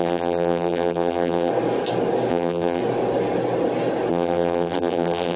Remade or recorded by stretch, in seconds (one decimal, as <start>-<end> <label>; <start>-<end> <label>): 0.0-1.5 remade; 1.5-2.3 recorded; 2.3-2.8 remade; 2.8-4.1 recorded; 4.1-5.4 remade